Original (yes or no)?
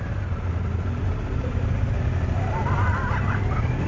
yes